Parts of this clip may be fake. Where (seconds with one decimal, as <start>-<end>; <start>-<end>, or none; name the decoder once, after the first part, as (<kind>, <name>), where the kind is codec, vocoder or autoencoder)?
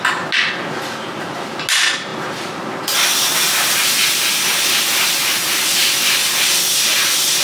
none